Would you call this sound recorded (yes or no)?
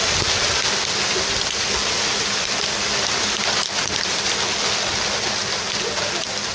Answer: yes